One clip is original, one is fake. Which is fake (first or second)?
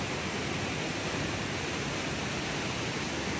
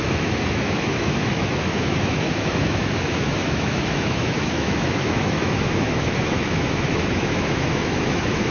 second